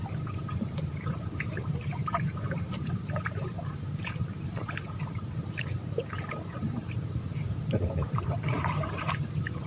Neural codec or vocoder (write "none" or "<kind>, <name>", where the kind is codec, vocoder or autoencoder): vocoder, BigVGAN v2